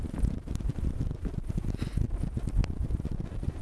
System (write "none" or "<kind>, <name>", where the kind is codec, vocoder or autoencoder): none